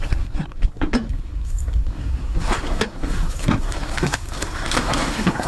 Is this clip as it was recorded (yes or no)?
no